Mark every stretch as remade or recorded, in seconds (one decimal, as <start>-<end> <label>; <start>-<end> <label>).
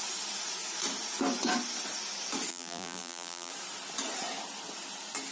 0.0-2.5 recorded; 2.5-3.5 remade; 3.5-5.3 recorded